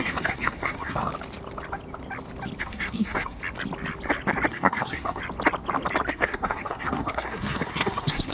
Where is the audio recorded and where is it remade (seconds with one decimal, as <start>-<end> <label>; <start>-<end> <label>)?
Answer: 0.0-1.1 remade; 1.1-2.6 recorded; 2.6-3.4 remade; 3.4-4.5 recorded; 4.5-5.2 remade; 5.2-6.1 recorded; 6.1-8.3 remade

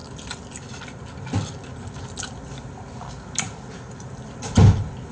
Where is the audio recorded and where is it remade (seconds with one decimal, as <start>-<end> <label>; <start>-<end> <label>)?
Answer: 0.0-5.1 recorded

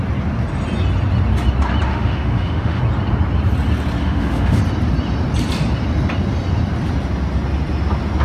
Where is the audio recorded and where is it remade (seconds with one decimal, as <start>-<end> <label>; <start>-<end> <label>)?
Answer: 0.0-1.9 recorded; 1.9-2.8 remade; 2.8-4.0 recorded; 4.0-4.6 remade; 4.6-8.2 recorded

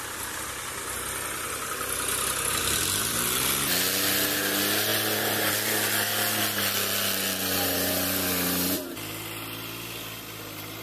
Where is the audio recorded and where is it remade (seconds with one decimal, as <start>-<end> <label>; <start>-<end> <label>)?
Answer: 0.0-10.8 recorded

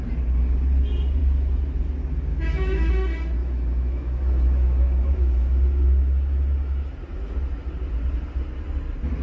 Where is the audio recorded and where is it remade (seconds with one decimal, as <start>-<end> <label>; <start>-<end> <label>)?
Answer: 0.0-2.3 recorded; 2.3-2.9 remade; 2.9-3.4 recorded; 3.4-6.9 remade; 6.9-9.2 recorded

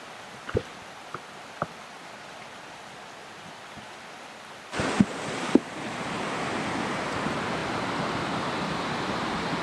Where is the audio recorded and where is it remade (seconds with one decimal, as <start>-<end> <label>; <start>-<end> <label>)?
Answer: 0.0-7.6 recorded; 7.6-9.6 remade

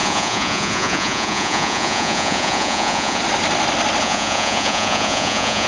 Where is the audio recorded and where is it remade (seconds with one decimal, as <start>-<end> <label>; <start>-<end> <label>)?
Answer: 0.0-3.2 remade; 3.2-4.0 recorded; 4.0-5.7 remade